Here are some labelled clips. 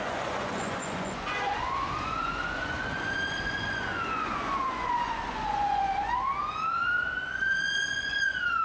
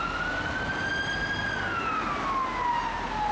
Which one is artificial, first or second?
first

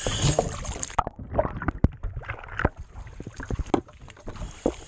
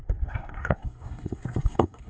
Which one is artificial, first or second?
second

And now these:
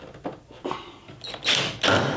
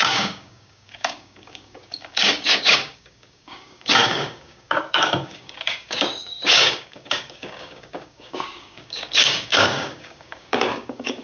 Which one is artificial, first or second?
second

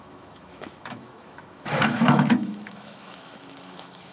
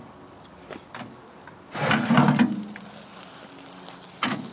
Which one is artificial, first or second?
first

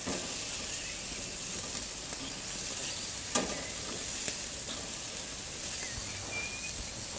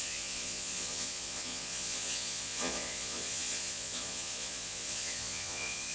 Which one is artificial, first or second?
second